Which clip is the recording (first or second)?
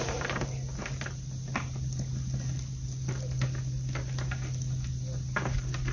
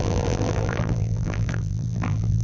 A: first